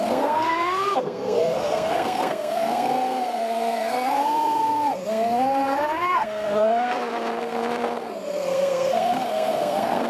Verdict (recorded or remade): remade